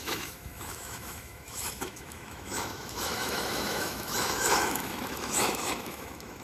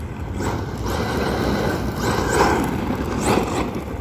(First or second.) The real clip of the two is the second